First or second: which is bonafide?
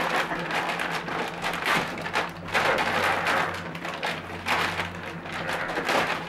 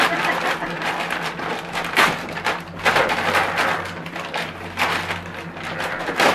first